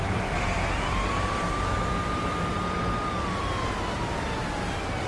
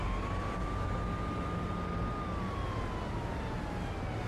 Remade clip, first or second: first